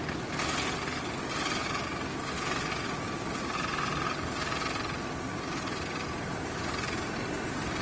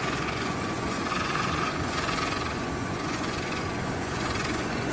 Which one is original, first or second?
first